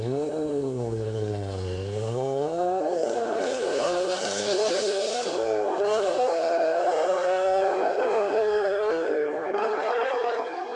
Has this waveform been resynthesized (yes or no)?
yes